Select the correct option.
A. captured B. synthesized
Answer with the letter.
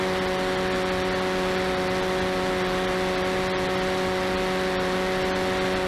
A